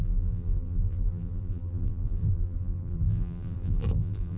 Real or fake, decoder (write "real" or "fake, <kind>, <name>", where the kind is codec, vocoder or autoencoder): fake, vocoder, BigVGAN v2